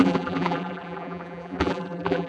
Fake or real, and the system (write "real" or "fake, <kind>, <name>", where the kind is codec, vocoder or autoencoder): fake, vocoder, BigVGAN v2